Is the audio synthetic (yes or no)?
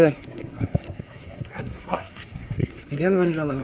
yes